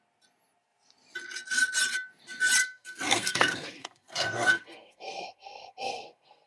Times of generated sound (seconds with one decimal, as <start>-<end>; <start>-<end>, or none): 2.6-6.5